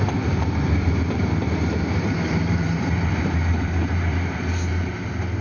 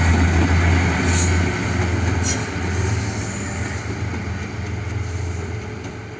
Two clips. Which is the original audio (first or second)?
second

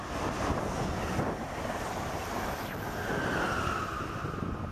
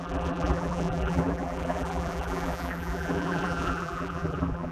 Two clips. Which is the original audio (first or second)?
first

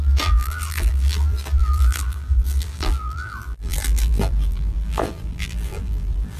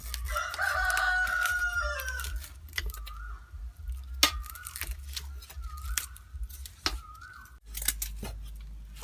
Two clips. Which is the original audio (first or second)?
second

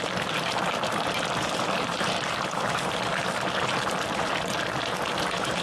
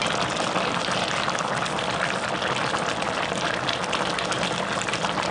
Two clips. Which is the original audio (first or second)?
second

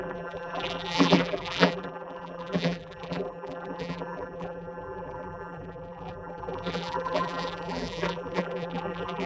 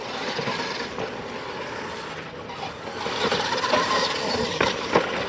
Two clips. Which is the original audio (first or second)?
second